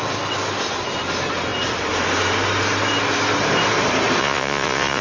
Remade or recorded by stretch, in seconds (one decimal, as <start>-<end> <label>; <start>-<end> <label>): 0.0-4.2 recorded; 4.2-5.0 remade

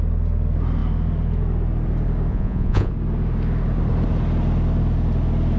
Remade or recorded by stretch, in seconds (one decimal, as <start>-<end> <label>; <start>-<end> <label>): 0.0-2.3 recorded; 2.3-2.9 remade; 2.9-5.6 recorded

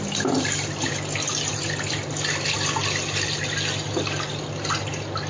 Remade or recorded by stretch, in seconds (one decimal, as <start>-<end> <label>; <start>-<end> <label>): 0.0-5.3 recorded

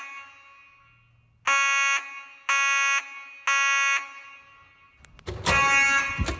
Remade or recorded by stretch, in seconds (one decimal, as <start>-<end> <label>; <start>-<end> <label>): 0.0-6.4 recorded